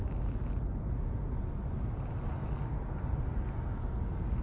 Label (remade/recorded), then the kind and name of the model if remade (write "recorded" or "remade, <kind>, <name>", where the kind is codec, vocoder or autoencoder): recorded